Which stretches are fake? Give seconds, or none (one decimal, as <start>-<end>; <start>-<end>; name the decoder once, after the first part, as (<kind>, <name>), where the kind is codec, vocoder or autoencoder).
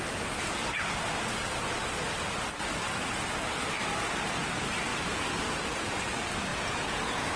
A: 6.5-7.4 (vocoder, Vocos)